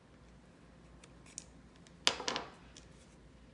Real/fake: real